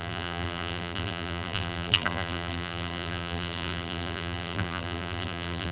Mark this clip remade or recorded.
remade